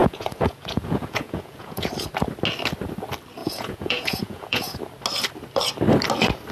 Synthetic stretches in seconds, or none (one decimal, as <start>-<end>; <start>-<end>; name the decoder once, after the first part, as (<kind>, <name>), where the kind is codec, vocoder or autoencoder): 0.0-1.9 (vocoder, Vocos); 3.4-4.8